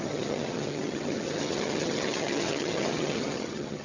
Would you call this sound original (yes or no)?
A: no